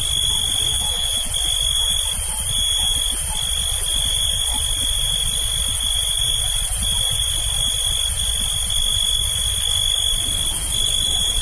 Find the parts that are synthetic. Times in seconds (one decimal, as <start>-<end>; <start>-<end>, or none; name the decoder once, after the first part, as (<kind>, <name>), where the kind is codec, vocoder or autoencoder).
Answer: 0.7-1.3 (vocoder, Vocos)